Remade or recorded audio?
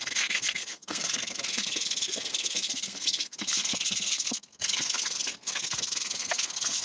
remade